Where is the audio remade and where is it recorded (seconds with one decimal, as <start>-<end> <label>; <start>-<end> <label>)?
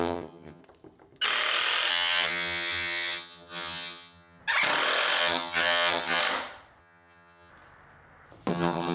0.0-0.6 remade; 0.6-1.9 recorded; 1.9-4.4 remade; 4.4-5.2 recorded; 5.2-6.2 remade; 6.2-6.8 recorded; 6.8-7.5 remade; 7.5-8.5 recorded; 8.5-8.9 remade